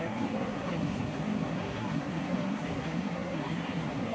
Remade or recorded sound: remade